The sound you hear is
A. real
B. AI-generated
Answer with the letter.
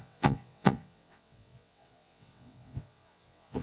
B